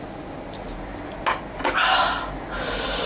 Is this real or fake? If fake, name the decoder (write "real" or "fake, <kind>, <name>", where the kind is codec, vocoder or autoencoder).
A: real